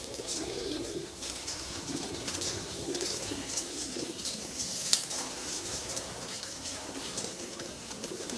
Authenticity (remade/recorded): remade